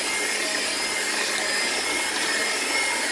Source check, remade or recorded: recorded